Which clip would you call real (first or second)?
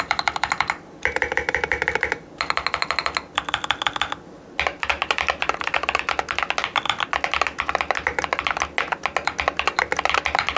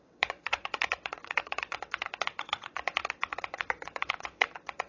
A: first